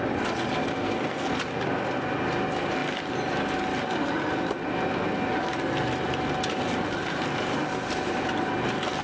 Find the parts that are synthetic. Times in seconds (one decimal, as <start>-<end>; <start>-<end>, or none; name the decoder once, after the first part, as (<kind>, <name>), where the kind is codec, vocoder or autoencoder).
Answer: 0.6-1.3 (codec, SNAC)